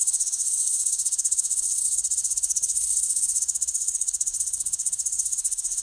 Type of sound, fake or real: fake